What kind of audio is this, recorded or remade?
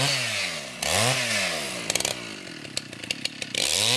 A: recorded